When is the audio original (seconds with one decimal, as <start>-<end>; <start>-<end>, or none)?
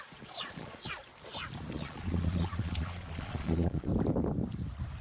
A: 1.1-1.7; 3.9-5.0